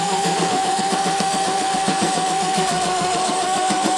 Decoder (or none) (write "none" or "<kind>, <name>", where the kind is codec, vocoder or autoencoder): codec, SNAC